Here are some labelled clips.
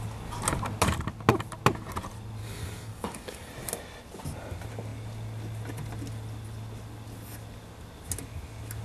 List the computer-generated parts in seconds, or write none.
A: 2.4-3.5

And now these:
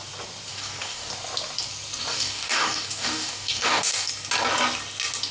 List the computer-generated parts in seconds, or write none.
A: 0.5-1.1; 2.1-4.1

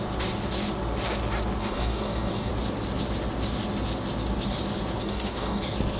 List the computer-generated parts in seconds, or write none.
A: 1.6-2.5; 5.0-5.6

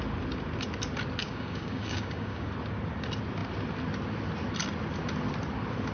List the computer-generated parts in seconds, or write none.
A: 1.2-2.5

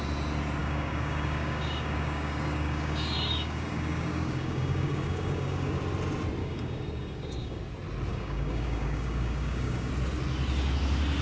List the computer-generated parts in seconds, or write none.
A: 0.6-5.8; 6.4-7.6; 8.1-9.9

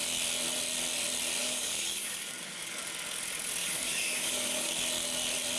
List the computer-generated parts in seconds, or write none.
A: 1.4-2.8; 3.6-4.7